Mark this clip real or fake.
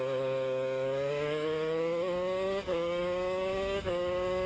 fake